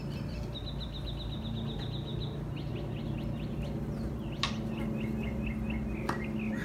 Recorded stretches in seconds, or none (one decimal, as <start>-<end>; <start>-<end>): 0.0-6.6